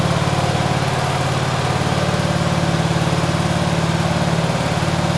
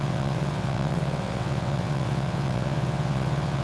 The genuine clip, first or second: first